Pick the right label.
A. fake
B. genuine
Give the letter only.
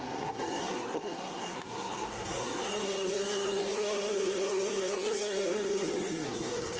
A